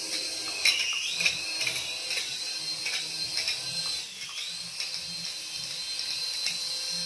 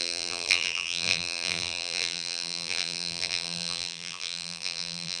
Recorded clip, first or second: first